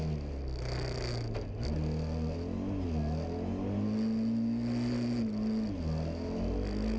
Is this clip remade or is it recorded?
recorded